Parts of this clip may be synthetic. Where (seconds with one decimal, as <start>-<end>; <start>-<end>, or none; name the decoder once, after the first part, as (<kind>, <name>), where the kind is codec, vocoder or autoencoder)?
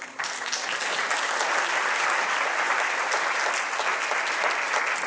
none